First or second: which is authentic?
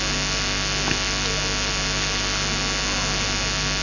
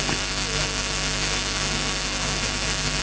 first